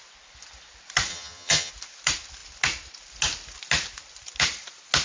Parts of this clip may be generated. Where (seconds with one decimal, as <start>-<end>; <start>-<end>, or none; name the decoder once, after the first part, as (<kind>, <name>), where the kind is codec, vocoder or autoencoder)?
1.1-1.7 (vocoder, HiFi-GAN)